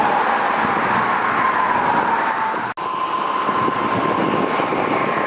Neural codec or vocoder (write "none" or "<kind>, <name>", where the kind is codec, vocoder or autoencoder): none